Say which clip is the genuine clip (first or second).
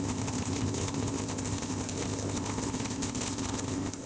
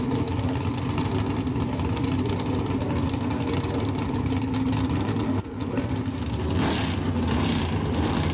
second